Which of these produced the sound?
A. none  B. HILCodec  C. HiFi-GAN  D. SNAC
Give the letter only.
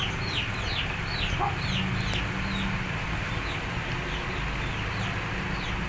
A